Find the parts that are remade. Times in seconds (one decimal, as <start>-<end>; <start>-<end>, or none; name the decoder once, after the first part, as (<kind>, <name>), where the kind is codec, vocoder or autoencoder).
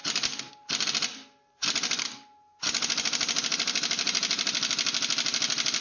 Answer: none